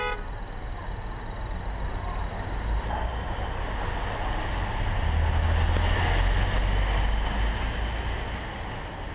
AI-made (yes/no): no